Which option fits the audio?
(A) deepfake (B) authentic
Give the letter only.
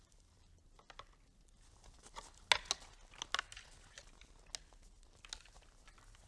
B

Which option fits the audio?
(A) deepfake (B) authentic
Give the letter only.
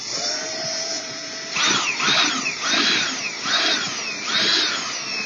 A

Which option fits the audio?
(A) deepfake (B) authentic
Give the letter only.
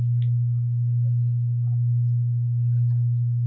B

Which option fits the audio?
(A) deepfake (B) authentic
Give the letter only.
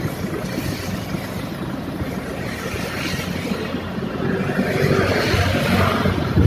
B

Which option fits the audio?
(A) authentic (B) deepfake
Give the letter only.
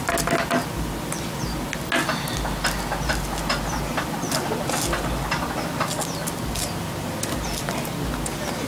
A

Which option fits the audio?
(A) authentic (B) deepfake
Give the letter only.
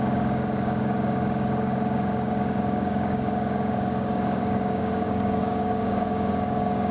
B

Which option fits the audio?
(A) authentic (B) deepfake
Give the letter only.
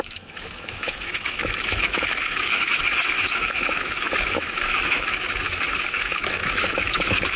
B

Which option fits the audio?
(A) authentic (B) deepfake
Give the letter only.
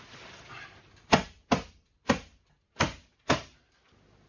A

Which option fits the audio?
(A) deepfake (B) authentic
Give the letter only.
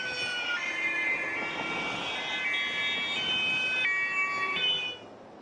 B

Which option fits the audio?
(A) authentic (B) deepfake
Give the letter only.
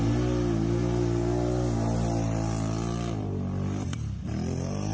A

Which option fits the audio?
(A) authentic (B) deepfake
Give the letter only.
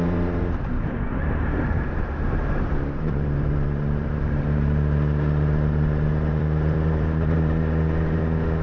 B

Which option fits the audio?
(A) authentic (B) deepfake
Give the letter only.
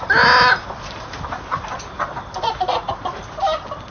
A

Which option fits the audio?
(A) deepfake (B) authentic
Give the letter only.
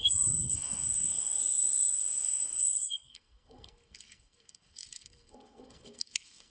A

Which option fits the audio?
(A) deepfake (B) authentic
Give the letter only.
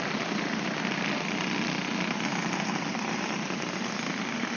B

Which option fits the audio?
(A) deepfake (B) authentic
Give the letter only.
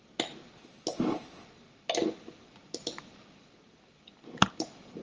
B